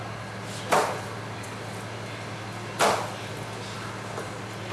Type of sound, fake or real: real